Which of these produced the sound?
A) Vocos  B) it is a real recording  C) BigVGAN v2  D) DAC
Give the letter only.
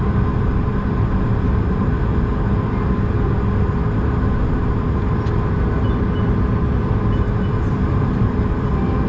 B